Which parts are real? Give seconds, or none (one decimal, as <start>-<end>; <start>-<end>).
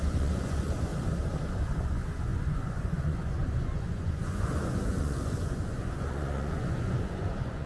0.9-1.5